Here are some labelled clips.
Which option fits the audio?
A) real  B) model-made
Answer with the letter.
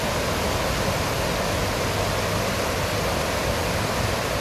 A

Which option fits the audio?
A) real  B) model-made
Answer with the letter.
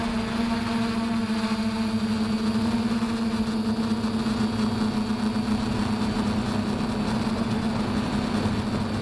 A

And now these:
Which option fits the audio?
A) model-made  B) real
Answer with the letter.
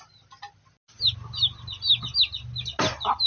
B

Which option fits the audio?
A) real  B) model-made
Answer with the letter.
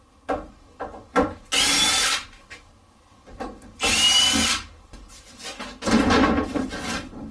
A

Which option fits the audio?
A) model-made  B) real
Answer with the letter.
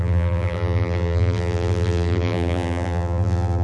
A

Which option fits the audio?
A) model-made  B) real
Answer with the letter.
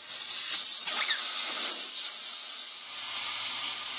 B